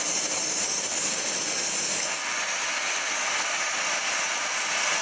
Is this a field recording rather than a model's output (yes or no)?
yes